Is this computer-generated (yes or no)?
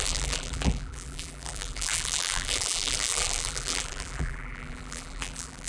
yes